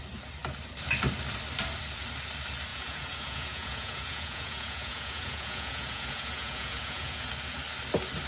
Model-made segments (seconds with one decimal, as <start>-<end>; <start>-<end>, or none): 2.7-7.3